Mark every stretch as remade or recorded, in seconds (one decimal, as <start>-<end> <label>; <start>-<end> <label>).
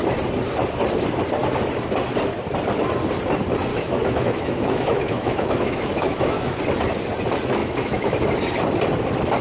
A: 0.0-3.7 recorded; 3.7-6.6 remade; 6.6-7.6 recorded; 7.6-8.1 remade; 8.1-9.4 recorded